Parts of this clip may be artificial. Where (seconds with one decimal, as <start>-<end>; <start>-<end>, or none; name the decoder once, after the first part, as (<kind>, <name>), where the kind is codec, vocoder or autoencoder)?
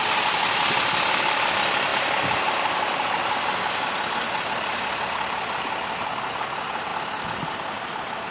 none